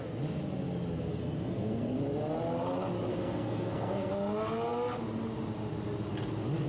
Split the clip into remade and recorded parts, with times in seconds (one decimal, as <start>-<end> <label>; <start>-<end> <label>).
0.0-1.1 recorded; 1.1-2.0 remade; 2.0-3.1 recorded; 3.1-4.1 remade; 4.1-6.7 recorded